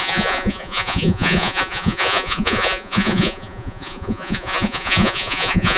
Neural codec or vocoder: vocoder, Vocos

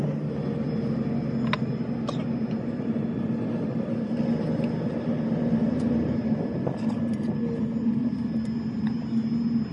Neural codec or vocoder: none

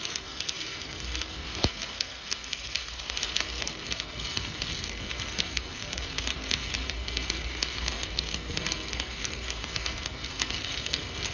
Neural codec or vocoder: codec, SNAC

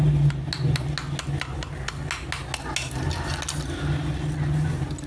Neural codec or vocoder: none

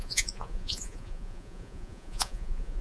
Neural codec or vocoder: vocoder, Vocos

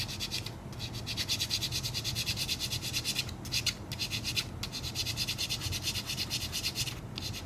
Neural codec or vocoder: none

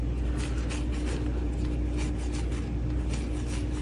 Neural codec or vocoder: none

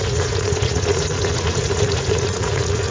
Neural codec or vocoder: vocoder, Vocos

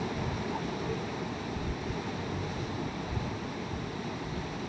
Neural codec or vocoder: none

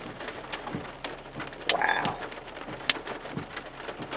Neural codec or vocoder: none